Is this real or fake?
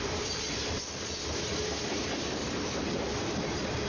real